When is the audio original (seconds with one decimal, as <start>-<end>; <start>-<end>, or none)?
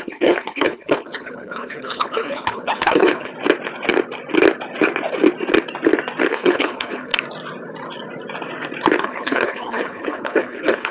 3.3-6.3; 7.1-9.0